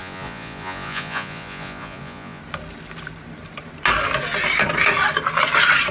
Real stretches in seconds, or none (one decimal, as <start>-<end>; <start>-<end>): 2.4-5.9